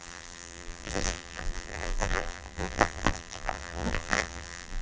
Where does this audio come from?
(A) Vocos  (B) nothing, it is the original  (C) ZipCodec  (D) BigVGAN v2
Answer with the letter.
D